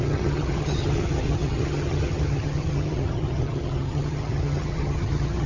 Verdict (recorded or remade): remade